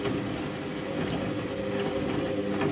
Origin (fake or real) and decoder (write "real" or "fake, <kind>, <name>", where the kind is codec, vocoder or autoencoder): real